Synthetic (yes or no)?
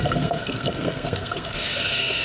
yes